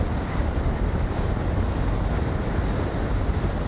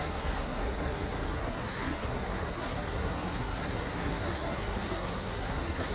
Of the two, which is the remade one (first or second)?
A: second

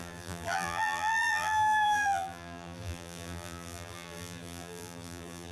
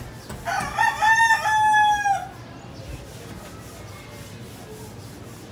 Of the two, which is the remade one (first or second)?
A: first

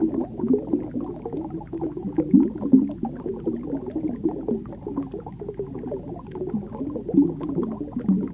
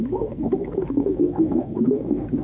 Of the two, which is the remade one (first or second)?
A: second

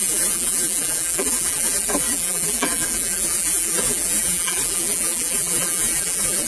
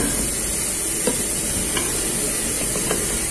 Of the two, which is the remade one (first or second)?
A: first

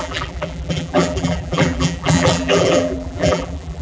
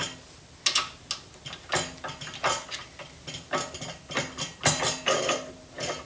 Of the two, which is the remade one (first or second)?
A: first